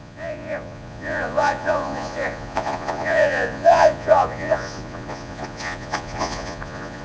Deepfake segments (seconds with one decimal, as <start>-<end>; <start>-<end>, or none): 0.0-7.0